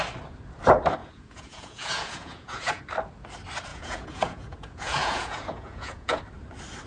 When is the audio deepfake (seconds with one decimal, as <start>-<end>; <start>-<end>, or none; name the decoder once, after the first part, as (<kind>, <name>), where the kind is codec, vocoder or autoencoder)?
1.0-2.8 (vocoder, Vocos); 3.7-6.2